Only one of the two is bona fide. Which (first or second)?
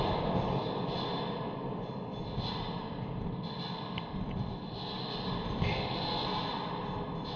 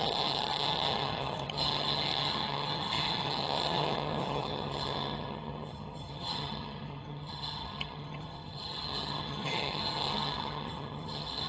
first